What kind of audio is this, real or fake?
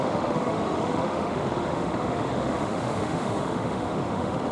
fake